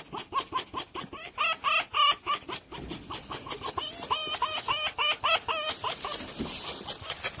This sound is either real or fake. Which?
real